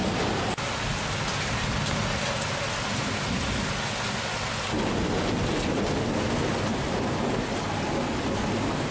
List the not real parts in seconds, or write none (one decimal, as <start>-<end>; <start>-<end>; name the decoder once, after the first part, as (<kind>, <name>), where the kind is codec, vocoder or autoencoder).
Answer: none